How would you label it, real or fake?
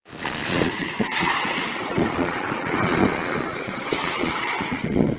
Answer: fake